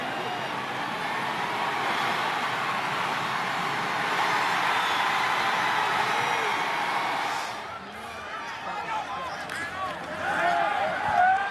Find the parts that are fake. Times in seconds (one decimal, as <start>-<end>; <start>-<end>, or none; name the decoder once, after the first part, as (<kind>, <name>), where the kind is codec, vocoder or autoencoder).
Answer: 6.5-9.7 (vocoder, BigVGAN v2)